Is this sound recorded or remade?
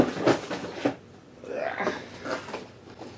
recorded